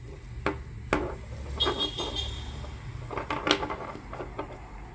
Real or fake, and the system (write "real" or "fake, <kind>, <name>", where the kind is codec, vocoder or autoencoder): real